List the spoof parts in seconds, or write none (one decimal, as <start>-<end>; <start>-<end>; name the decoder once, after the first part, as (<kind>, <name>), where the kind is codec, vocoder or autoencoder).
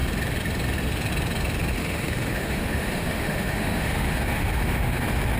1.8-5.0 (autoencoder, DAC-VAE)